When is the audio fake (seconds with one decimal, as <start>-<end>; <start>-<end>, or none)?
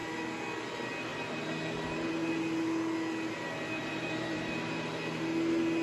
1.1-2.1; 3.8-4.9